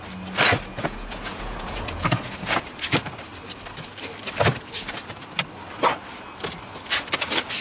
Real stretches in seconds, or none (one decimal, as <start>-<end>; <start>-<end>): 0.0-0.7; 2.6-7.6